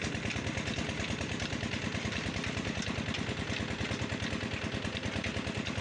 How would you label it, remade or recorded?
recorded